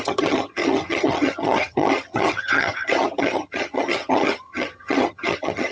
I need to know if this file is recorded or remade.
remade